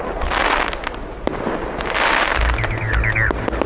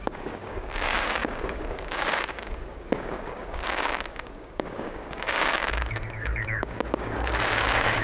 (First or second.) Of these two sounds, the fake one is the second